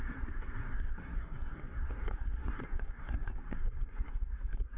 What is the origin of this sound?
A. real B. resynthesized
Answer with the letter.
B